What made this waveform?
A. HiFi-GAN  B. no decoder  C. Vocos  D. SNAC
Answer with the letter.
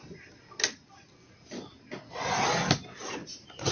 B